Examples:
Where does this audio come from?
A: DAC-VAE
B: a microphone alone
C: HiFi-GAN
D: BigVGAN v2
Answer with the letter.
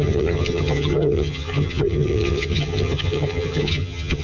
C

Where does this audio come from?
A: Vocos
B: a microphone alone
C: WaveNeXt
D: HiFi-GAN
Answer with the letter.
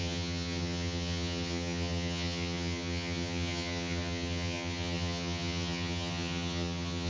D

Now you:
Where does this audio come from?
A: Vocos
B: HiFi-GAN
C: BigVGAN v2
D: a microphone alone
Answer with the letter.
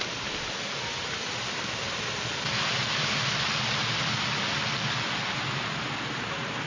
D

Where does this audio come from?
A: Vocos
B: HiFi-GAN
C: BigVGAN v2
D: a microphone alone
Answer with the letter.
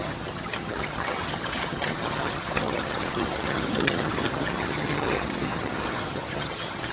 B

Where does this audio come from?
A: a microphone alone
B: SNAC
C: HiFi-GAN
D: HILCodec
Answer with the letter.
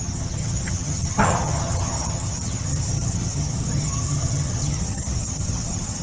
C